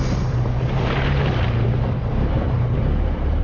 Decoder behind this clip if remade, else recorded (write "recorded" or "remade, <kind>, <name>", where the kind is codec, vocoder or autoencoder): remade, vocoder, BigVGAN v2